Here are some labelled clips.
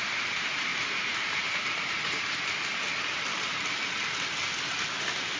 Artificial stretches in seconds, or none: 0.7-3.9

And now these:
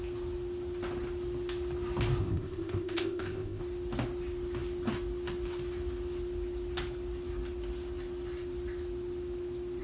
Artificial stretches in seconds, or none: 2.2-3.6

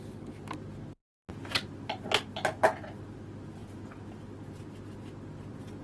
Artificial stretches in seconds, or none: none

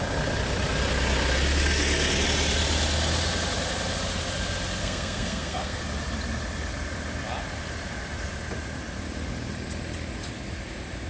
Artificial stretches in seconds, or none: 4.8-5.8

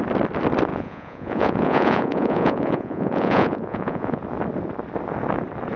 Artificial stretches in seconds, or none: 0.7-4.2

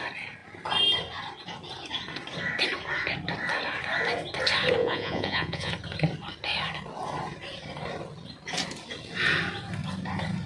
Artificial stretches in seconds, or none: 4.8-5.7

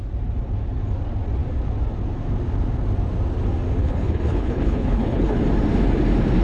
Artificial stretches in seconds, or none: 3.8-5.4

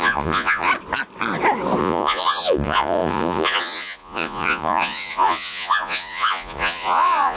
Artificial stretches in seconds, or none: 0.0-0.7; 1.8-7.4